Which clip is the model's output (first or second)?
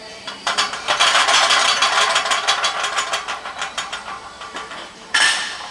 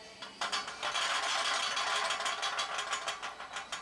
first